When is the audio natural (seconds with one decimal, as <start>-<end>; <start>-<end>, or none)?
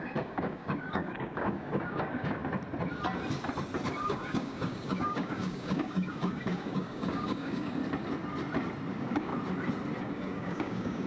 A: 2.4-4.0; 7.8-8.9; 9.3-10.0